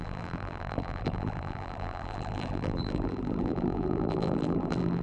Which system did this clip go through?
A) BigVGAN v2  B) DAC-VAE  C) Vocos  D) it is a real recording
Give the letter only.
A